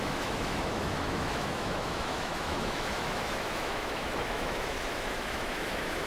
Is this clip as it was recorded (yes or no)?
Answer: no